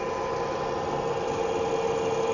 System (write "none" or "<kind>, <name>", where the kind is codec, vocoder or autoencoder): none